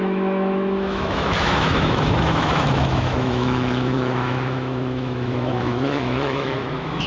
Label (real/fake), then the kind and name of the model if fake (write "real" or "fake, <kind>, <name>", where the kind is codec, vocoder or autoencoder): fake, autoencoder, DAC-VAE